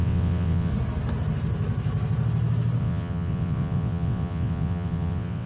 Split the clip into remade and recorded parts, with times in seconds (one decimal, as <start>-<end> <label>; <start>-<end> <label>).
0.0-0.7 remade; 0.7-2.8 recorded; 2.8-5.5 remade